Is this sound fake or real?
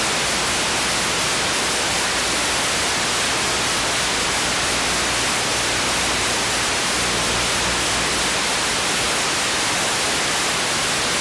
real